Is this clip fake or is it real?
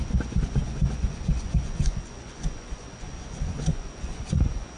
fake